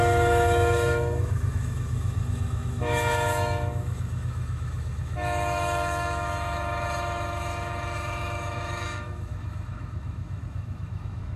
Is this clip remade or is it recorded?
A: remade